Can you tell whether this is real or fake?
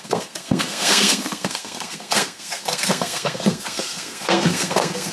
fake